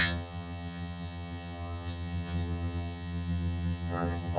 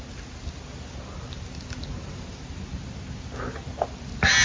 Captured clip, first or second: second